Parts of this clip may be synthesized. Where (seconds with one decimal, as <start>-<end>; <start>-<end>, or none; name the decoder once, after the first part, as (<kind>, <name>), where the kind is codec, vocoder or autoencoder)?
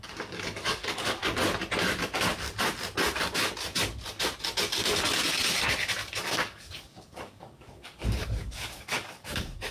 0.0-1.2 (codec, DAC); 6.2-9.7